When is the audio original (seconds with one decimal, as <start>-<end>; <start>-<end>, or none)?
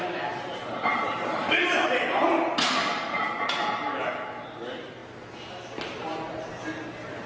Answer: 0.0-0.9; 3.2-7.3